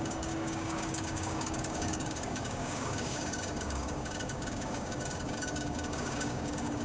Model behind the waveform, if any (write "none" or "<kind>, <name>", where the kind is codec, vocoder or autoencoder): codec, DAC